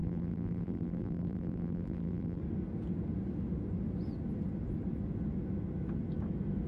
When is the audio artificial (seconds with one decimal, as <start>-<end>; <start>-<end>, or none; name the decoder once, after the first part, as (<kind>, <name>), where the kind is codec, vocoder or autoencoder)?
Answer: 0.0-2.4 (vocoder, BigVGAN v2)